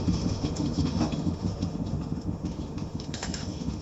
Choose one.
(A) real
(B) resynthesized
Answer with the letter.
B